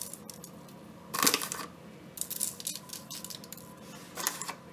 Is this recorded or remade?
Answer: recorded